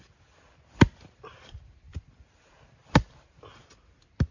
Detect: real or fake real